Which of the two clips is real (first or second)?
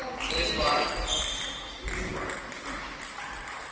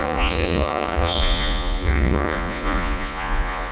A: first